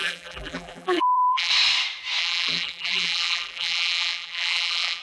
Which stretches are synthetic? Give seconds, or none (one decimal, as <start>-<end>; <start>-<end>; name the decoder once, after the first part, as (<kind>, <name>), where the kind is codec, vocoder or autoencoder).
0.0-1.5 (vocoder, BigVGAN v2); 2.2-5.0